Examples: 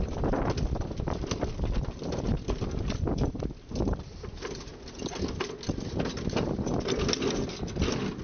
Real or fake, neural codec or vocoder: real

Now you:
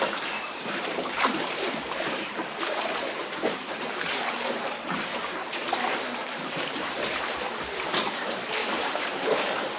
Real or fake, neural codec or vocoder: fake, vocoder, BigVGAN v2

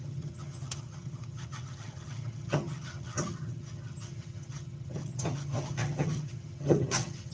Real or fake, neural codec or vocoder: fake, vocoder, HiFi-GAN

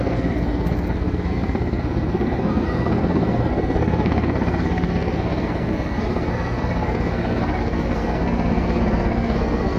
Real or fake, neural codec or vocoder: fake, codec, SNAC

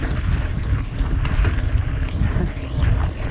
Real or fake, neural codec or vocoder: real